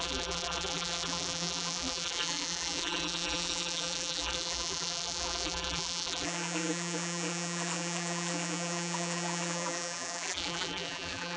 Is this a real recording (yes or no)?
no